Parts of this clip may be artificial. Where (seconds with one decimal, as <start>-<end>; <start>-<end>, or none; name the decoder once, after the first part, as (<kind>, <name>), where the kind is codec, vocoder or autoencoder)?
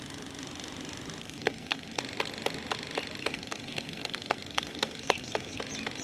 1.2-2.0 (codec, SNAC); 3.2-5.6